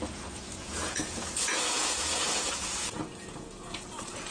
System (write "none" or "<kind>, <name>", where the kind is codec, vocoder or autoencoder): vocoder, Vocos